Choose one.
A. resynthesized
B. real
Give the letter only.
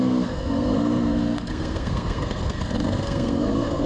A